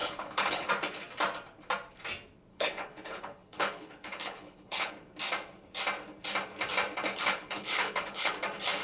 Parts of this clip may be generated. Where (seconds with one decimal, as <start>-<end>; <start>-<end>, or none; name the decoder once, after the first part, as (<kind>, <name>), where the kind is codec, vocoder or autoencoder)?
0.0-0.7 (codec, HILCodec); 2.5-4.9; 7.1-8.3